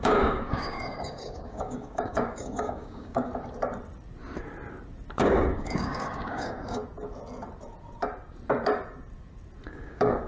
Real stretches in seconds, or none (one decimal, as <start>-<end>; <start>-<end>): 3.3-5.2; 6.8-9.7